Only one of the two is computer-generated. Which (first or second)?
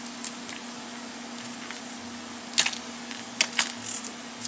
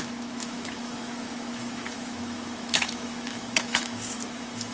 second